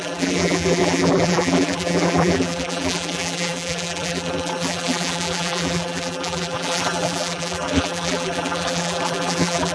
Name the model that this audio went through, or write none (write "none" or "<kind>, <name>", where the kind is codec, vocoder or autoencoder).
vocoder, BigVGAN v2